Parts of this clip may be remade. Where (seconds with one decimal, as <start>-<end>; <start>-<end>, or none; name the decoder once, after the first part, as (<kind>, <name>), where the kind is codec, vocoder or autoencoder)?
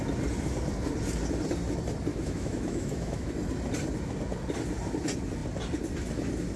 2.1-3.3 (autoencoder, DAC-VAE)